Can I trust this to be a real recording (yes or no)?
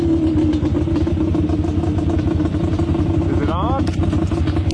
yes